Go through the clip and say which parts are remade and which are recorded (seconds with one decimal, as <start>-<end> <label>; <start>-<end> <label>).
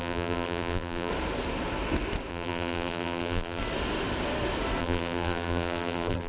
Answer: 0.0-1.1 remade; 1.1-2.3 recorded; 2.3-3.6 remade; 3.6-4.8 recorded; 4.8-6.3 remade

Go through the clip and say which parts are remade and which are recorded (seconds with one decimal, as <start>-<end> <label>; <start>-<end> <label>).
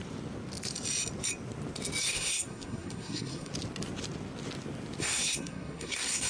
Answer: 0.0-2.0 recorded; 2.0-3.5 remade; 3.5-5.0 recorded; 5.0-6.3 remade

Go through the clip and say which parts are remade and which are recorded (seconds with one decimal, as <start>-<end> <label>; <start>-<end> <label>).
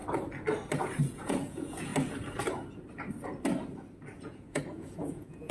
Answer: 0.0-1.0 recorded; 1.0-1.9 remade; 1.9-4.2 recorded; 4.2-5.5 remade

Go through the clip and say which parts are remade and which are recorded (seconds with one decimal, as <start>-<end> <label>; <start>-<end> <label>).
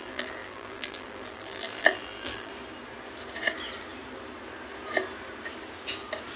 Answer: 0.0-2.5 remade; 2.5-6.4 recorded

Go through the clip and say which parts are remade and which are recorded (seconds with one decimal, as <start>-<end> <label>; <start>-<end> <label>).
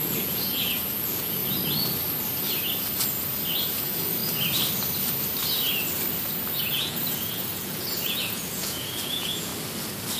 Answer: 0.0-1.4 remade; 1.4-3.8 recorded; 3.8-4.2 remade; 4.2-6.5 recorded; 6.5-9.5 remade; 9.5-10.2 recorded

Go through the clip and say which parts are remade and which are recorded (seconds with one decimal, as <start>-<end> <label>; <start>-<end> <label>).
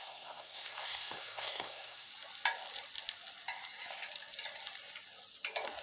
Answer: 0.0-2.1 remade; 2.1-5.8 recorded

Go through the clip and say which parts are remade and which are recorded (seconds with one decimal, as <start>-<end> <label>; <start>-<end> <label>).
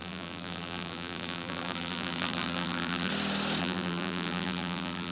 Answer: 0.0-3.1 remade; 3.1-3.6 recorded; 3.6-5.1 remade